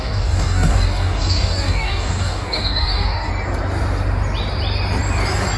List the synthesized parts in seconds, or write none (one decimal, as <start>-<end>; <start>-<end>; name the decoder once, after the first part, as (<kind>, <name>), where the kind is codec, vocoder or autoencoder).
0.0-3.3 (codec, DAC)